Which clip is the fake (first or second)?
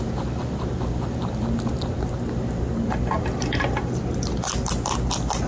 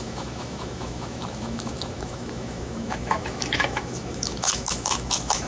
second